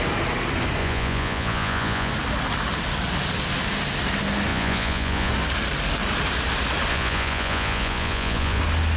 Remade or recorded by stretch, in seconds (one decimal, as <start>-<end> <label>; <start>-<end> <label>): 0.0-0.8 recorded; 0.8-2.1 remade; 2.1-4.5 recorded; 4.5-5.3 remade; 5.3-6.9 recorded; 6.9-8.6 remade; 8.6-9.0 recorded